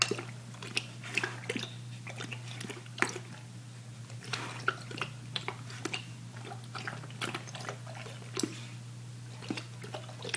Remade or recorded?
recorded